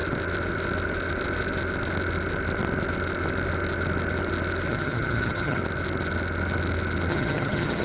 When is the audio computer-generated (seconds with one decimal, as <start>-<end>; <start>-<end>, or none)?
4.7-5.6; 7.1-7.8

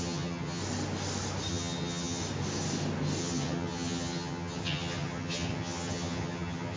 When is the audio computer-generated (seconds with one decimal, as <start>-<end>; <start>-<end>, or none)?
0.0-0.6; 1.5-2.2; 3.2-6.8